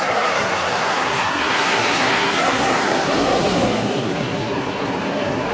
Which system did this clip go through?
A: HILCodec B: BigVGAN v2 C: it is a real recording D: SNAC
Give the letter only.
D